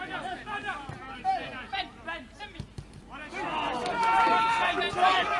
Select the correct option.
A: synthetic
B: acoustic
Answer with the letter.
B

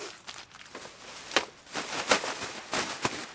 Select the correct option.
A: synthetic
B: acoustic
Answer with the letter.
B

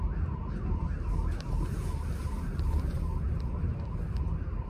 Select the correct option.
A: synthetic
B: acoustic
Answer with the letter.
B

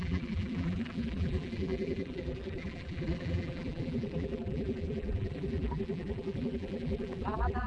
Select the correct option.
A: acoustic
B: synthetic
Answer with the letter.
B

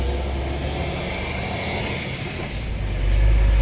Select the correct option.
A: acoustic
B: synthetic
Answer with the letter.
A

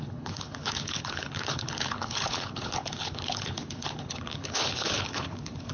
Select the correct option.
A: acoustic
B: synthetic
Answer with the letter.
B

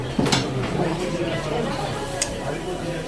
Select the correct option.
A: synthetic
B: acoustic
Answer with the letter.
A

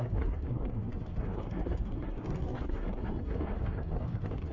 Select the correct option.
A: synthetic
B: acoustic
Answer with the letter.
A